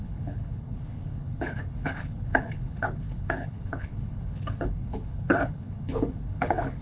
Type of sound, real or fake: fake